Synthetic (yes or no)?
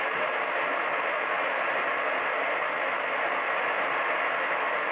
no